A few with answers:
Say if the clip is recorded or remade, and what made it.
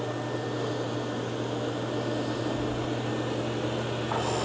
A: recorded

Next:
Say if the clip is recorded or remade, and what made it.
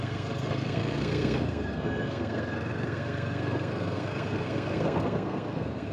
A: remade, codec, SNAC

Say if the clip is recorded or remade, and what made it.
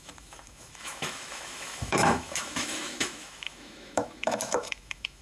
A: remade, autoencoder, DAC-VAE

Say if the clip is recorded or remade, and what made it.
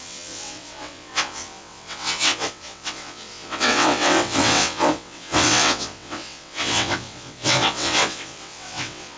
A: remade, vocoder, WaveNeXt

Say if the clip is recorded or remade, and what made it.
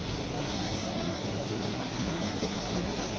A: remade, codec, SNAC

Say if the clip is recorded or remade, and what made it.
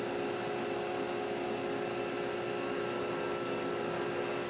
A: recorded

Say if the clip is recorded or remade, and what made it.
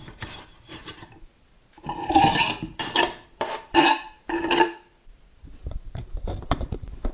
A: remade, vocoder, BigVGAN v2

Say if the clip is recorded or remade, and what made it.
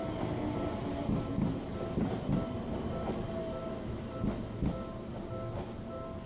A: recorded